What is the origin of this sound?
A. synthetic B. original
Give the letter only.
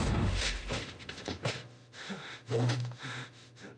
A